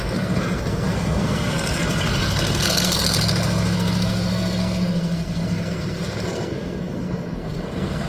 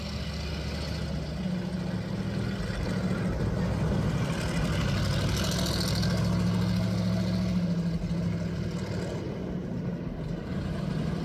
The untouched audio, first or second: second